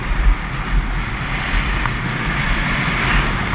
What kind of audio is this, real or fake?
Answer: real